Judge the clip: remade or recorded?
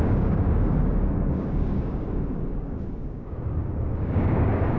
remade